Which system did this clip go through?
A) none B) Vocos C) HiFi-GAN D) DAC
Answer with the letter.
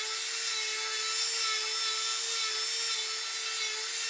A